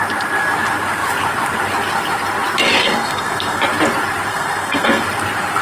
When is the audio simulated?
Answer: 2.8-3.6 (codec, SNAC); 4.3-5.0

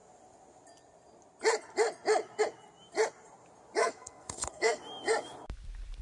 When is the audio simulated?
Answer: 3.8-4.8 (codec, SNAC)

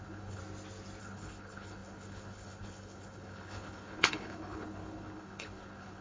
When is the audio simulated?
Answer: 0.0-0.4 (codec, HILCodec); 1.0-6.0

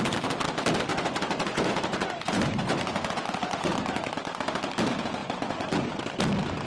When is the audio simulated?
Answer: 0.9-4.1 (vocoder, Vocos); 5.2-5.9

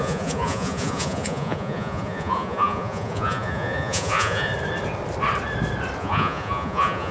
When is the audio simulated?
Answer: 0.0-4.5 (vocoder, Vocos); 6.0-7.1